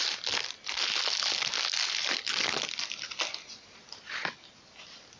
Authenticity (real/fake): real